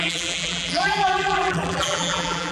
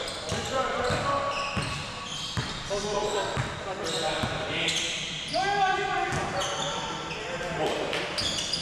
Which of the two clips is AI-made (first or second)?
first